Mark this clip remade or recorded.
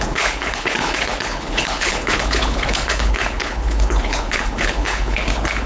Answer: remade